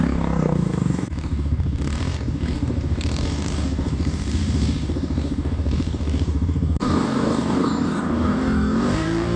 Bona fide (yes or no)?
no